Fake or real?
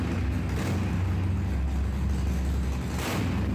real